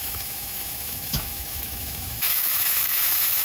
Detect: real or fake fake